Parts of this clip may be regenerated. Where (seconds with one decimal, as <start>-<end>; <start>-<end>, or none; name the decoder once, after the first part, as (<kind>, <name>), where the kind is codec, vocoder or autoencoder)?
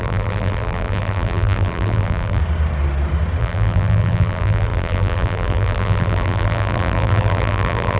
0.0-2.4 (vocoder, BigVGAN v2); 3.4-8.0